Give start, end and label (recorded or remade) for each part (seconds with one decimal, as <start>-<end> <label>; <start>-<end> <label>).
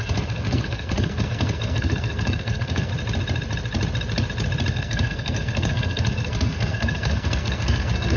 0.0-2.9 remade; 2.9-4.7 recorded; 4.7-8.2 remade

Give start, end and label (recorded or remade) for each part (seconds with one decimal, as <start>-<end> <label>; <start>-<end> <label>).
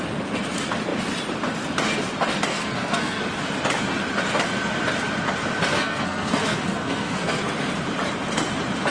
0.0-2.5 recorded; 2.5-3.2 remade; 3.2-5.7 recorded; 5.7-7.4 remade; 7.4-8.9 recorded